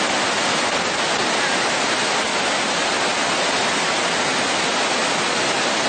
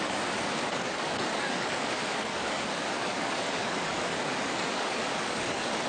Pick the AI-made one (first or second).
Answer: second